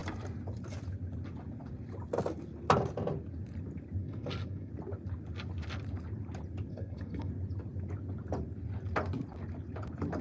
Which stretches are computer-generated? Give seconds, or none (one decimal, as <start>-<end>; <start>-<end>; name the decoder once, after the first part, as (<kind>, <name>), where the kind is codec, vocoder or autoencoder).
4.0-4.7 (codec, SNAC); 6.7-7.3